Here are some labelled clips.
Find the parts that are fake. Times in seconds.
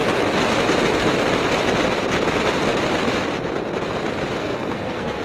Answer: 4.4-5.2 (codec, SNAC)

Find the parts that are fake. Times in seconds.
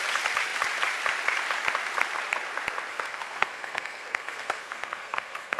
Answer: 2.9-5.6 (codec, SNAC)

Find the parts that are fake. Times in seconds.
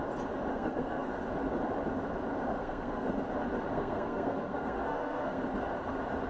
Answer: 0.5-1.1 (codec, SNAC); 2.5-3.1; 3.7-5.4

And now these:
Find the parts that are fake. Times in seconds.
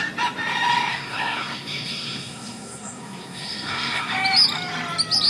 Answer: 0.9-4.1 (codec, SNAC)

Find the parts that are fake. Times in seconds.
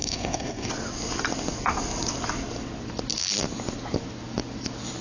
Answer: 0.0-0.7 (codec, SNAC)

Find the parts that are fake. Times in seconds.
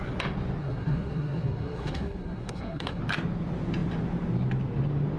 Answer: 0.6-3.0 (codec, SNAC)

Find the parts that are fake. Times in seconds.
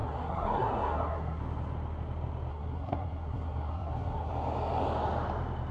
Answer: 0.0-1.4 (codec, SNAC); 2.5-4.3